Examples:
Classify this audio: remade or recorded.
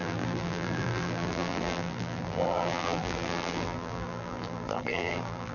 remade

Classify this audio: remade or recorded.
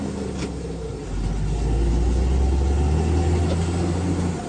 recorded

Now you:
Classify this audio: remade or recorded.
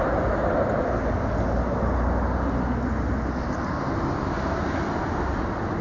recorded